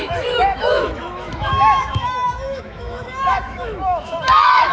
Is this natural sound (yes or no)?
no